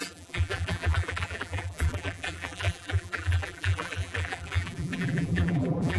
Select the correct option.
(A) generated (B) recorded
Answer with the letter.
A